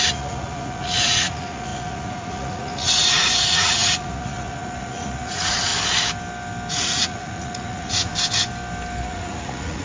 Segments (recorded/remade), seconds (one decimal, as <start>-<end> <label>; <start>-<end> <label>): 0.0-5.7 remade; 5.7-6.7 recorded; 6.7-8.1 remade; 8.1-9.0 recorded; 9.0-9.8 remade